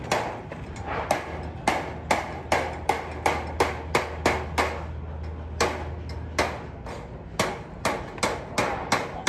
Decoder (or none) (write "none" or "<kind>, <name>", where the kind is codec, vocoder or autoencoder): none